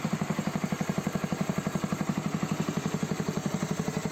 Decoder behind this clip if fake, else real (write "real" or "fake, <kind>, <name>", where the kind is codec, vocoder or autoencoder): fake, vocoder, BigVGAN v2